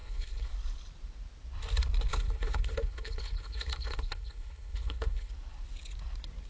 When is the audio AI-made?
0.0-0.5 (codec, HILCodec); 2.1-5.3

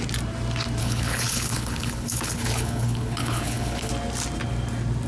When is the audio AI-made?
0.8-3.9 (codec, HILCodec)

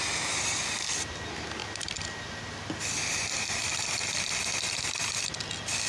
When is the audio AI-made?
none

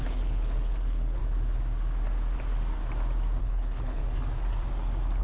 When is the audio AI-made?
0.0-1.2 (codec, HILCodec); 3.4-4.0

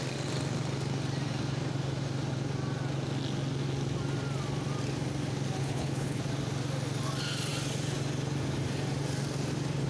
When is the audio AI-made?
5.6-6.2 (codec, HILCodec)